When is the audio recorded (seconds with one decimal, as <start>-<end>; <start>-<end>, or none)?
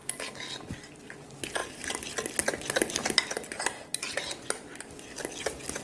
0.0-5.8